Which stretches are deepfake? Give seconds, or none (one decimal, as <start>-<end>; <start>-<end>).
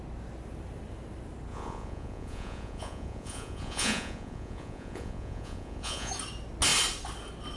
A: 1.5-6.1